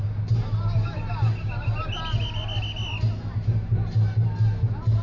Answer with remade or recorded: recorded